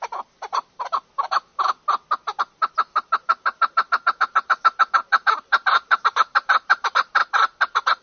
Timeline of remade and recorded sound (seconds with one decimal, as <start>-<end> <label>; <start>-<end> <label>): 0.0-1.5 remade; 1.5-2.7 recorded; 2.7-7.2 remade; 7.2-8.0 recorded